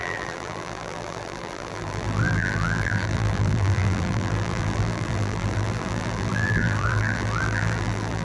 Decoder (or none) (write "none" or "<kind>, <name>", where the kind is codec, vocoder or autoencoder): vocoder, BigVGAN v2